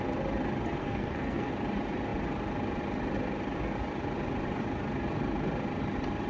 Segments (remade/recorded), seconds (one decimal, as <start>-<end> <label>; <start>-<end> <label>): 0.0-0.8 recorded; 0.8-1.5 remade; 1.5-6.3 recorded